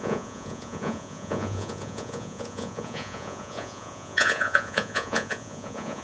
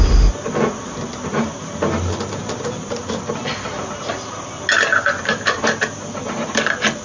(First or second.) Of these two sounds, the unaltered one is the second